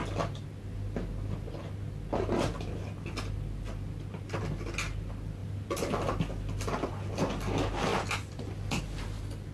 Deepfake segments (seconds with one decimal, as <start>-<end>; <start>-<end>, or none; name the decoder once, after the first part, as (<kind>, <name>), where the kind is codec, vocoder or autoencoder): none